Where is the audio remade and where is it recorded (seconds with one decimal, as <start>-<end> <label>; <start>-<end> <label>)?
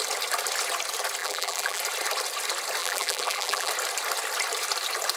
0.0-1.2 recorded; 1.2-1.8 remade; 1.8-2.8 recorded; 2.8-3.7 remade; 3.7-5.2 recorded